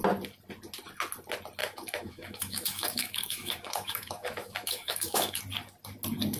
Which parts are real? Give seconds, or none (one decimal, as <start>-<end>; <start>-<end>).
0.0-1.6; 5.4-6.4